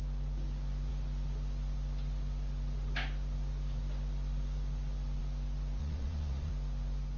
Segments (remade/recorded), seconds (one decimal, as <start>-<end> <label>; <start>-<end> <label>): 0.0-5.8 recorded; 5.8-6.5 remade; 6.5-7.2 recorded